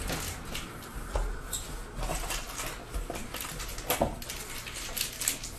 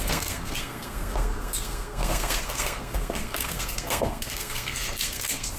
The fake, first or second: second